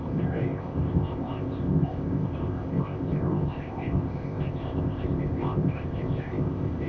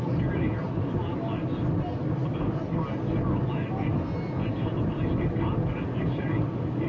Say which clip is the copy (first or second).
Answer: first